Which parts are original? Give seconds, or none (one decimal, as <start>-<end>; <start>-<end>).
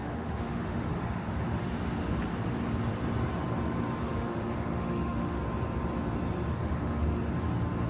1.7-4.0; 5.4-6.5; 7.3-7.9